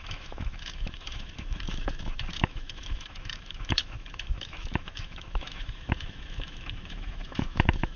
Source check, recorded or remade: remade